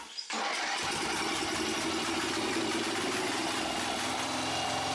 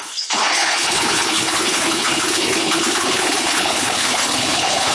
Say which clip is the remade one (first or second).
second